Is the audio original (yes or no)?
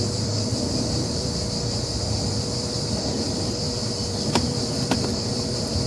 no